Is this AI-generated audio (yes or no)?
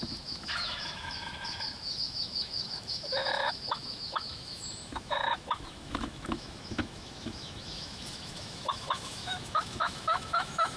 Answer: yes